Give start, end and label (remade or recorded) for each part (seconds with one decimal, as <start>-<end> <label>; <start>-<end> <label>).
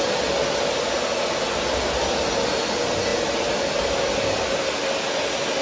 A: 0.0-5.6 recorded